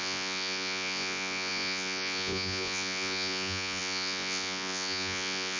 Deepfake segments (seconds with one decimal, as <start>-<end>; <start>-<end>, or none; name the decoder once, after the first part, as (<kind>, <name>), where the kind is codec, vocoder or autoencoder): 0.0-5.6 (vocoder, Vocos)